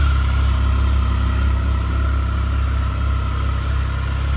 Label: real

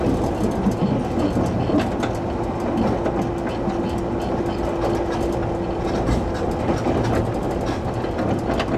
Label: real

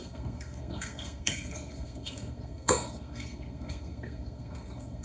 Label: fake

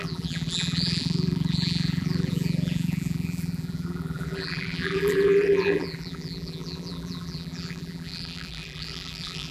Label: fake